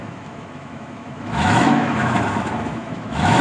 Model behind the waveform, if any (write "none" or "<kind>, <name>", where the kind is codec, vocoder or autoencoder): autoencoder, DAC-VAE